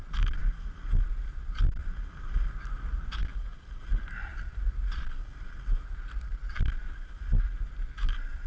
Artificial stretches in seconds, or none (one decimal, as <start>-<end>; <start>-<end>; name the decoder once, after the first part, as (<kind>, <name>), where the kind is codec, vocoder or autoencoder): 4.3-6.4 (vocoder, BigVGAN v2)